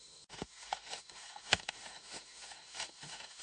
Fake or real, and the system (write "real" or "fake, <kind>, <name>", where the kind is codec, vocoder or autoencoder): fake, autoencoder, DAC-VAE